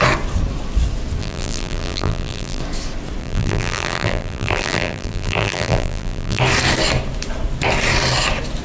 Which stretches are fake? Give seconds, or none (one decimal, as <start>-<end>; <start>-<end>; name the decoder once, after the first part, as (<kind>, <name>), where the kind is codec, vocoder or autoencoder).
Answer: 1.2-2.6 (vocoder, BigVGAN v2); 3.2-6.4